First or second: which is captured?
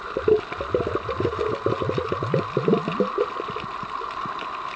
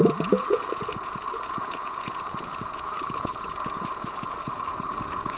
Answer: first